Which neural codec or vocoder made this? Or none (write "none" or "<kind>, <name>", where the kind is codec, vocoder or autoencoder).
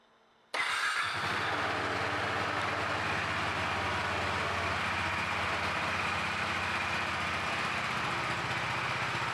none